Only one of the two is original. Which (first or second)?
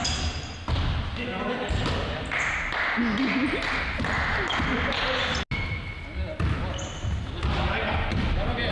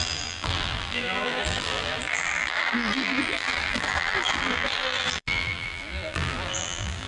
first